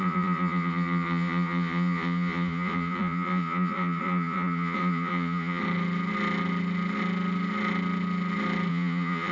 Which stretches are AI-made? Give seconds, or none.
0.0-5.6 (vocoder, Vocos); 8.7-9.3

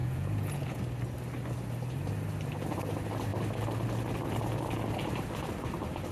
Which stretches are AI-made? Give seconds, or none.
0.0-0.8 (vocoder, Vocos)

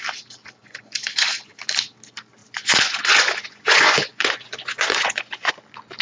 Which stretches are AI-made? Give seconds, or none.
0.6-1.6 (vocoder, Vocos); 2.4-5.5

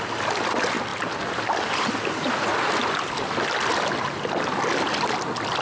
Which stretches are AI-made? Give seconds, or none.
none

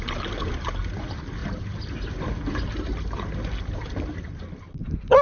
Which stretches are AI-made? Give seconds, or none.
none